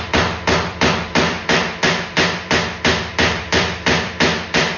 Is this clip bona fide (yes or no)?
no